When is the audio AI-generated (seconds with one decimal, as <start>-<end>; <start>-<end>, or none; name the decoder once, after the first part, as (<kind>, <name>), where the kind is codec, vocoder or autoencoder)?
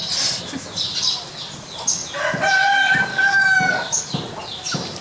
3.1-4.0 (codec, DAC)